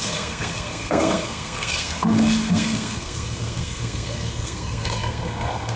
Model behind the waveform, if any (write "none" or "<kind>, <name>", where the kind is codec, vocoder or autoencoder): codec, SNAC